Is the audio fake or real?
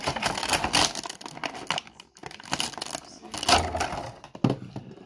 real